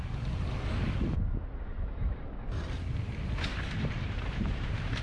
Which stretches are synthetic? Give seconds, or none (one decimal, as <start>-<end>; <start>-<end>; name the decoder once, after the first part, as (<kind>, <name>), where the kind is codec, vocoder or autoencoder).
3.5-5.0 (vocoder, BigVGAN v2)